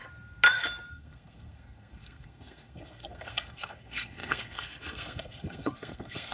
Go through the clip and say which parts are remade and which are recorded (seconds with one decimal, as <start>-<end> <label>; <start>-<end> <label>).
0.0-0.9 recorded; 0.9-6.3 remade